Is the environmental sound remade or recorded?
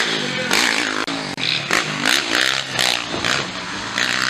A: recorded